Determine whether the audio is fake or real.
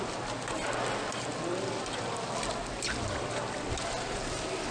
real